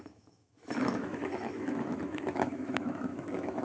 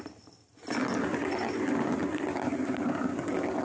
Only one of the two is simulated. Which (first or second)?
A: first